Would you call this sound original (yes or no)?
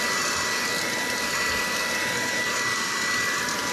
yes